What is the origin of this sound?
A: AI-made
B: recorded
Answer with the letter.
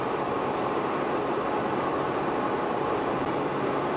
A